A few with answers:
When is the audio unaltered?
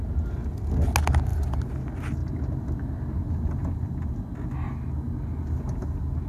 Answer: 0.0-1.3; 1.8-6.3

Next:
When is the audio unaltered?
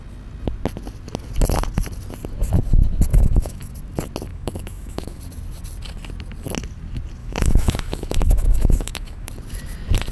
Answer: 0.0-3.1; 3.7-4.3; 5.2-7.2; 9.3-10.1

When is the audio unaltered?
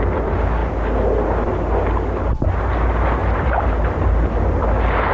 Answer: 0.0-5.1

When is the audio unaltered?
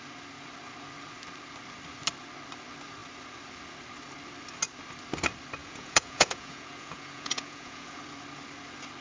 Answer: 0.0-5.6; 8.0-9.0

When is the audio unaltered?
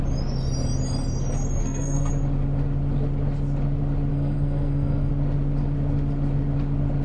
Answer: 0.0-1.6; 2.1-4.1; 5.1-7.0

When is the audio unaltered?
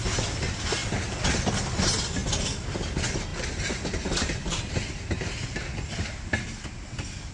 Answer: 0.0-7.3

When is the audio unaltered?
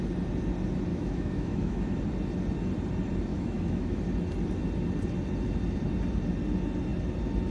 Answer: 0.0-0.9; 2.0-3.3; 4.0-7.5